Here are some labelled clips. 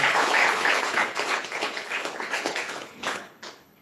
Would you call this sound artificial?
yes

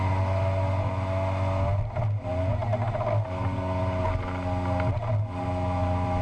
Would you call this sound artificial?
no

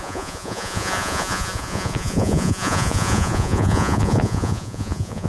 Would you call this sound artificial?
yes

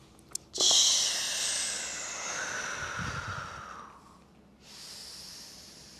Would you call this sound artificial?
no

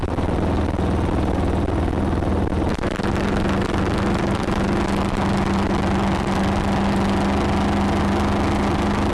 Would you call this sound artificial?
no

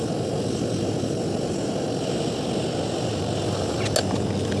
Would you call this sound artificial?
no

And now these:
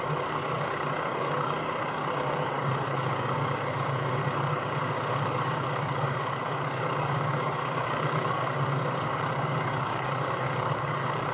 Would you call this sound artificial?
yes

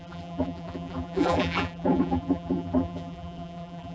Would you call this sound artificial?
yes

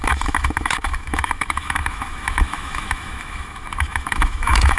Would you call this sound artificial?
yes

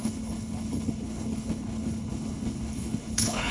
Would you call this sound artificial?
yes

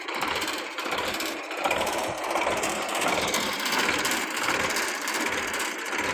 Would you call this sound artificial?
yes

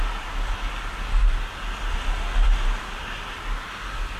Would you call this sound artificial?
no